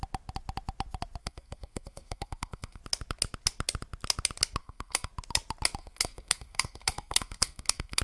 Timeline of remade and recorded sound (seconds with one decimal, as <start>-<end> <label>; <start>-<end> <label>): 0.0-1.2 recorded; 1.2-2.8 remade; 2.8-4.6 recorded; 4.6-5.1 remade; 5.1-5.8 recorded; 5.8-8.0 remade